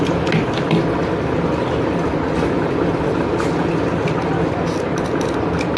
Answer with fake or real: real